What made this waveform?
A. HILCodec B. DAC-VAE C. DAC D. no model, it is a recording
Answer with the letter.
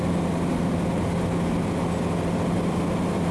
D